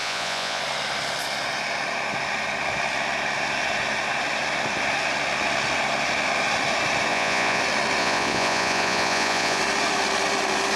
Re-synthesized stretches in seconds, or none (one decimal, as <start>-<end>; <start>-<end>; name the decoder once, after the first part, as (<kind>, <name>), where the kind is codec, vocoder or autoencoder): 0.0-0.6 (vocoder, Vocos); 7.1-7.6; 8.0-9.6